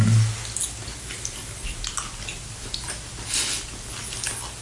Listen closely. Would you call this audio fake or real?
real